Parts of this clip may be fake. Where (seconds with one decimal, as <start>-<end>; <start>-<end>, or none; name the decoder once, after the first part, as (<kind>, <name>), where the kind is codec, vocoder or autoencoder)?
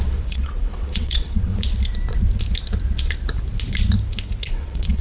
0.0-1.5 (vocoder, WaveNeXt); 4.5-5.0